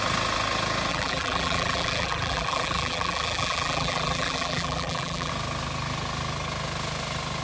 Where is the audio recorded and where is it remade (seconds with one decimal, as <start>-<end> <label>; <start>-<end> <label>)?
0.0-0.9 recorded; 0.9-5.3 remade; 5.3-7.4 recorded